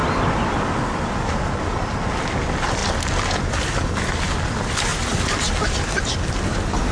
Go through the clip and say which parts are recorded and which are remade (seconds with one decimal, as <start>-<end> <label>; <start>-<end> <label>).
0.0-1.9 remade; 1.9-4.9 recorded; 4.9-6.4 remade; 6.4-6.9 recorded